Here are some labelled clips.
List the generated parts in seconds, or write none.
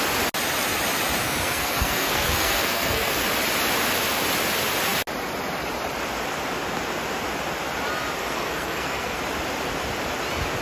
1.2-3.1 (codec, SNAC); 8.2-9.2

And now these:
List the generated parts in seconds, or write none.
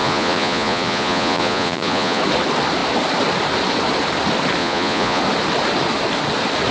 0.0-2.2 (vocoder, Vocos); 4.6-5.2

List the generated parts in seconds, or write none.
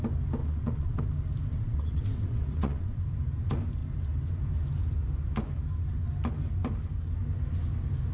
0.4-1.0 (vocoder, WaveNeXt); 1.5-3.0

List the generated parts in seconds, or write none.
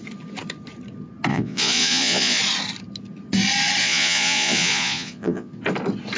1.3-2.4 (vocoder, Vocos); 3.8-5.5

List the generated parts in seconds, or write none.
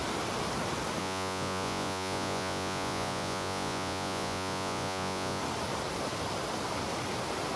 1.0-5.4 (vocoder, Vocos)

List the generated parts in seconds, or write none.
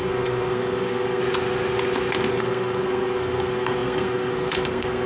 0.0-1.2 (codec, SNAC); 2.3-5.1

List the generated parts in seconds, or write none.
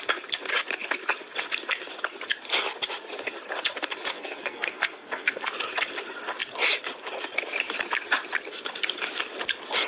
4.1-5.5 (codec, SNAC)